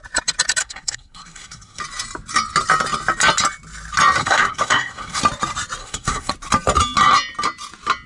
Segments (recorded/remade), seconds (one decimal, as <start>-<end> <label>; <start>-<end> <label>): 0.0-0.6 recorded; 0.6-1.8 remade; 1.8-4.2 recorded; 4.2-5.2 remade; 5.2-5.8 recorded; 5.8-6.3 remade; 6.3-8.1 recorded